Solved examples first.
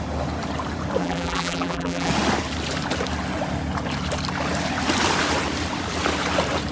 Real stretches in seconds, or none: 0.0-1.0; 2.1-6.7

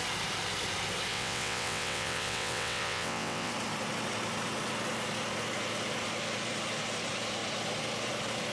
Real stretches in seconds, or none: 0.0-1.1; 3.5-8.5